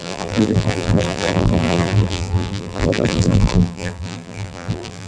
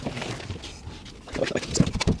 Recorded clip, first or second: second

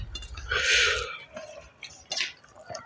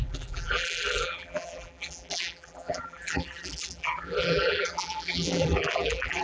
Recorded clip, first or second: first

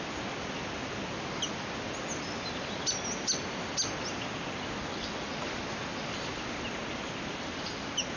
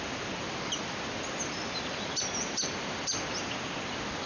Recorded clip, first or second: first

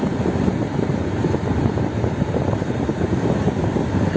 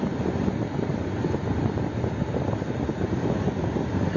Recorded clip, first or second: second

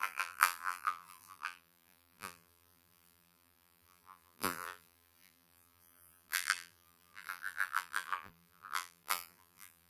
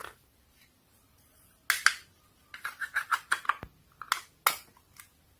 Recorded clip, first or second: second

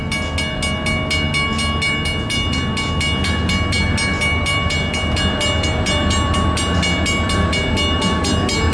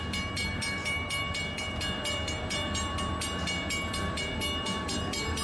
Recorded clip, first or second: first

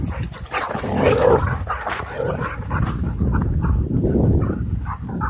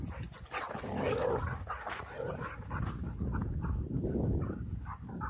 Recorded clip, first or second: second